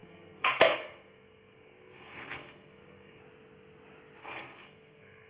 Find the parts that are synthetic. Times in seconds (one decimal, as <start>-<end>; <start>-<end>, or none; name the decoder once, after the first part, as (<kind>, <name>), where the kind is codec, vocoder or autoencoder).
0.0-3.2 (codec, SNAC); 4.2-5.3

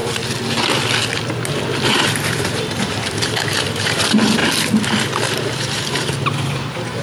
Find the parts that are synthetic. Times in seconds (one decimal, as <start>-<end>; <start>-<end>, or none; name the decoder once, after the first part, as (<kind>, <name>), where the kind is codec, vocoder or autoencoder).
1.9-4.4 (vocoder, BigVGAN v2); 5.2-7.0

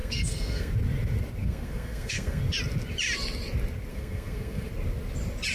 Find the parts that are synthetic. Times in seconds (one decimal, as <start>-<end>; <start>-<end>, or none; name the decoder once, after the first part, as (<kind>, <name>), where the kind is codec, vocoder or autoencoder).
0.0-0.7 (codec, SNAC); 1.4-2.4; 3.9-4.7

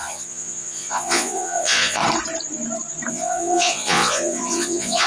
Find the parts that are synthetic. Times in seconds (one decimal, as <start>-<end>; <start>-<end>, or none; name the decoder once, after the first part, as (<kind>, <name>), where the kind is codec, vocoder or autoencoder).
0.0-2.0 (vocoder, Vocos); 3.1-5.1

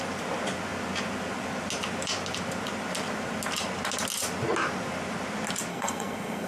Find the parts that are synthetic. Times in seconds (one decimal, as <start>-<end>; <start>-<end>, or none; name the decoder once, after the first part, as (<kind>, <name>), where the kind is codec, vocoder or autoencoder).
5.7-6.5 (codec, SNAC)

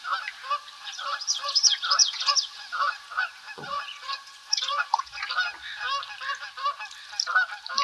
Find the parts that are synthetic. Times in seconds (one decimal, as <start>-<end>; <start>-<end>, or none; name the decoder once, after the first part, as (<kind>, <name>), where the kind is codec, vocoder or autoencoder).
0.8-5.3 (vocoder, Vocos)